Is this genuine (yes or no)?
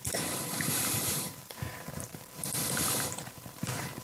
no